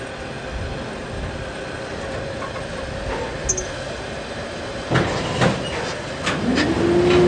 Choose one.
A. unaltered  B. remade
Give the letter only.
A